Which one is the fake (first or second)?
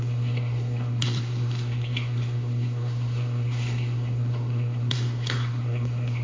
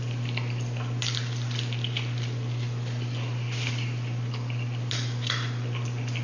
first